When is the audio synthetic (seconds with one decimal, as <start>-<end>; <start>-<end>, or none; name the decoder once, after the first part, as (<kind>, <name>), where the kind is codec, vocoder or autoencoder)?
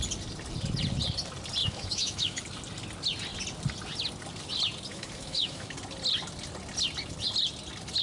1.6-2.4 (autoencoder, DAC-VAE); 4.9-5.7